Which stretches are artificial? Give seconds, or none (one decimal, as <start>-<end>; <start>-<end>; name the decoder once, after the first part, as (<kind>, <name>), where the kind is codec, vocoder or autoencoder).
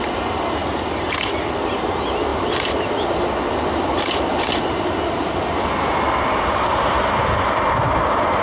0.6-1.4 (vocoder, BigVGAN v2); 2.3-7.2